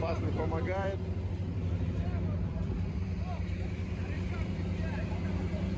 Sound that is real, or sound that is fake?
fake